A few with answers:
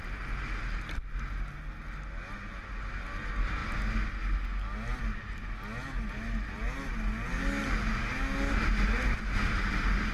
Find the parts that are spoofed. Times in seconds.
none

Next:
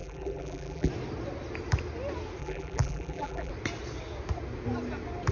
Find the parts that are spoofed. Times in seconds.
0.0-0.9 (vocoder, BigVGAN v2); 2.4-3.5

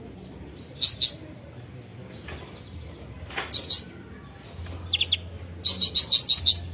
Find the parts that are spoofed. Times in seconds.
none

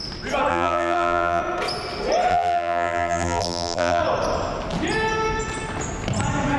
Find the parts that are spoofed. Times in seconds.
0.5-1.4 (vocoder, BigVGAN v2); 2.3-4.0